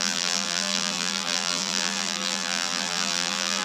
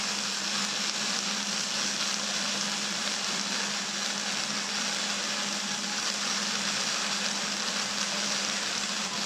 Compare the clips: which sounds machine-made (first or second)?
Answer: first